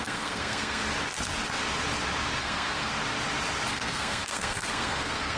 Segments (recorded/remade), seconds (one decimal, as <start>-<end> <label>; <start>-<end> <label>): 0.0-0.8 remade; 0.8-2.4 recorded; 2.4-2.9 remade; 2.9-3.7 recorded; 3.7-5.4 remade